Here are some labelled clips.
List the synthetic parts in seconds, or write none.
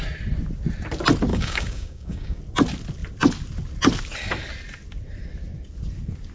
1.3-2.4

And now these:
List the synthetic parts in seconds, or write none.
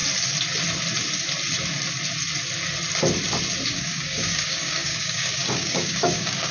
3.7-6.5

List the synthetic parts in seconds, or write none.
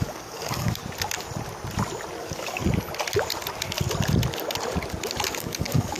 0.0-0.8; 2.2-2.6; 5.3-6.0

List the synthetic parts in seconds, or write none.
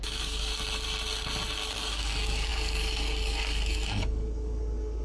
0.0-0.5; 1.7-5.0